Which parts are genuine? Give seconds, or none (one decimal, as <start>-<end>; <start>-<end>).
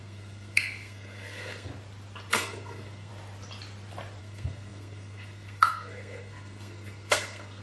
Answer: 1.7-2.3; 3.1-4.2